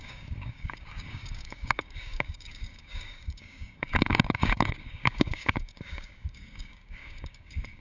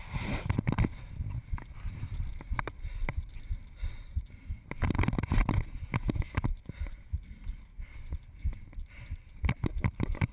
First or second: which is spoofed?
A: first